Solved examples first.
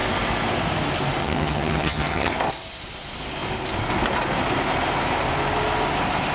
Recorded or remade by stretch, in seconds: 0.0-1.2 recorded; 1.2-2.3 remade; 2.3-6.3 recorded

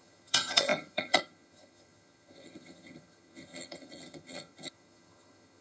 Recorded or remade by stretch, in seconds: 0.0-5.6 remade